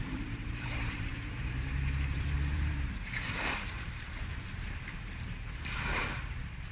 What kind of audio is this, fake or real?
fake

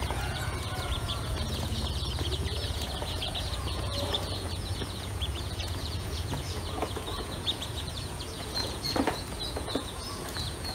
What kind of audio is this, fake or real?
fake